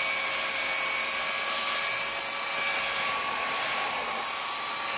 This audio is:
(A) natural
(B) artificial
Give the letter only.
A